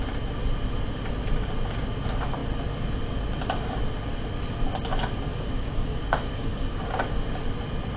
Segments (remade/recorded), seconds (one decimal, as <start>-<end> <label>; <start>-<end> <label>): 0.0-5.3 recorded; 5.3-6.9 remade; 6.9-8.0 recorded